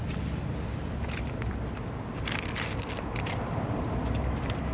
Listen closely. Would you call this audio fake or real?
real